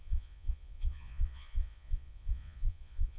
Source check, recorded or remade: remade